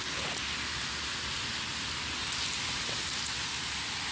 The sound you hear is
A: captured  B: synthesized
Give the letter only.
A